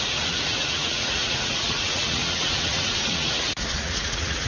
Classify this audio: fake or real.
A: fake